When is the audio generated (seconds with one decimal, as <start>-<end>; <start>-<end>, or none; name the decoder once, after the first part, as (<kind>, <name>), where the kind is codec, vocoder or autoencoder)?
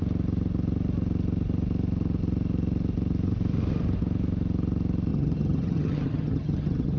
5.1-7.0 (vocoder, HiFi-GAN)